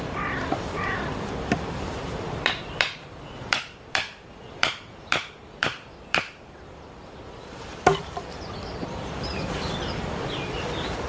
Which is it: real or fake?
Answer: fake